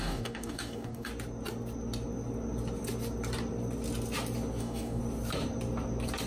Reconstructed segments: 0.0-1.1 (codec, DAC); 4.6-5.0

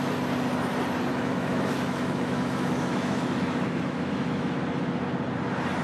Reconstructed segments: 1.1-4.6 (autoencoder, DAC-VAE)

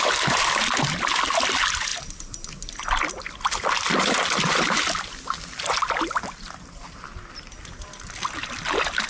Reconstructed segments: none